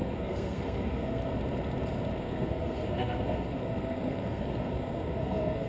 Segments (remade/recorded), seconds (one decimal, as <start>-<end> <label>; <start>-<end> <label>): 0.0-1.2 remade; 1.2-2.2 recorded; 2.2-5.7 remade